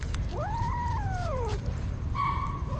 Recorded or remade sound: remade